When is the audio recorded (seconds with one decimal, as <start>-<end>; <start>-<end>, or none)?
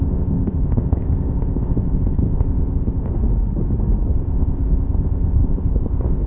3.1-4.1